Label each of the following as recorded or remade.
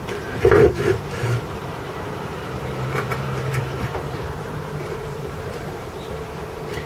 remade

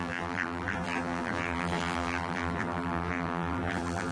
remade